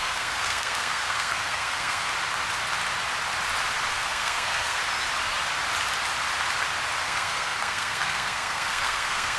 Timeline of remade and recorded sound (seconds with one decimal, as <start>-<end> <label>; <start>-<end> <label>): 0.0-2.1 remade; 2.1-3.9 recorded; 3.9-4.8 remade; 4.8-7.0 recorded; 7.0-9.4 remade